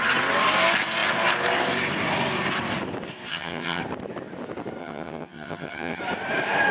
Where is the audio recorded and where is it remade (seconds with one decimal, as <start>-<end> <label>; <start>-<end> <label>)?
0.0-3.3 recorded; 3.3-3.8 remade; 3.8-4.8 recorded; 4.8-6.0 remade; 6.0-6.7 recorded